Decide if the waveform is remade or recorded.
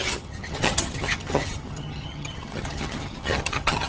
remade